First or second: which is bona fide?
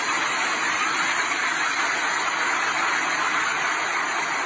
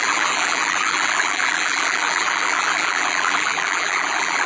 first